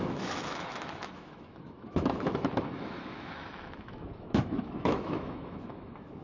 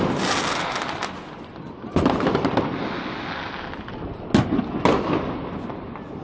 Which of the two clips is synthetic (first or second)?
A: first